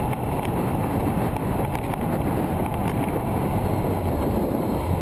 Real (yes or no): yes